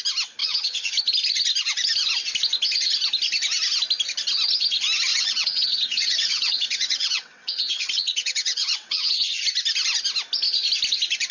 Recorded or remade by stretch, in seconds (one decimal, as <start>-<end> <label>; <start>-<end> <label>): 0.0-0.4 recorded; 0.4-0.9 remade; 0.9-5.1 recorded; 5.1-9.4 remade; 9.4-11.3 recorded